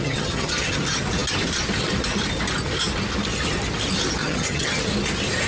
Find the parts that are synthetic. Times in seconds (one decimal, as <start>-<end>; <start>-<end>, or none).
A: 0.0-0.7; 4.2-4.8